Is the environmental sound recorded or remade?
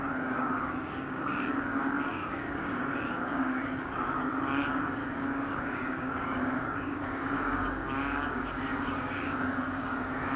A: remade